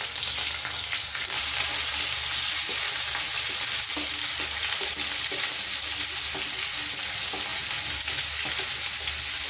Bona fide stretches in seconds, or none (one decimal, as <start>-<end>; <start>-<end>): 0.0-1.0; 2.0-7.5; 8.0-9.5